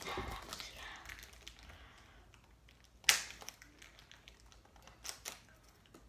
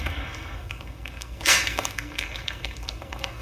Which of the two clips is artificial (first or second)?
second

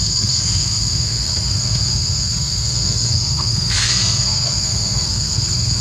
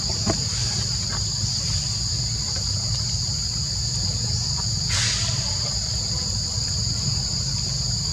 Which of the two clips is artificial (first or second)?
first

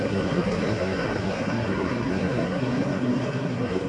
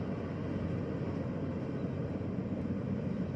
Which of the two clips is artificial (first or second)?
first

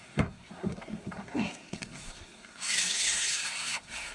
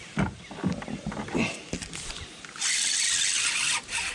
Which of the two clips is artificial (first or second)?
first